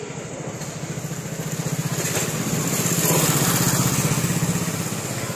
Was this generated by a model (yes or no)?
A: no